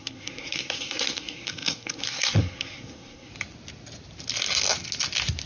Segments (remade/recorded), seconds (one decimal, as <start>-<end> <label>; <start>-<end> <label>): 0.0-3.3 remade; 3.3-5.5 recorded